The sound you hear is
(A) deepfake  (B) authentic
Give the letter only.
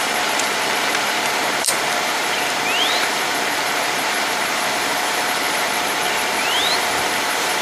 A